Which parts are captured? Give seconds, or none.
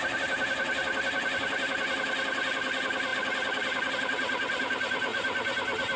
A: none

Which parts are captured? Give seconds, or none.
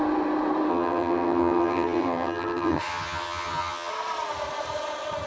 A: 0.0-0.7; 3.9-5.3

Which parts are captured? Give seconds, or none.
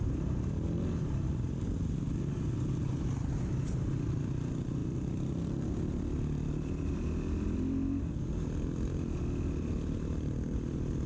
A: 0.0-11.1